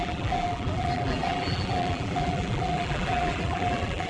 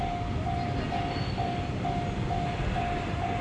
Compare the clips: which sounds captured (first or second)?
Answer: second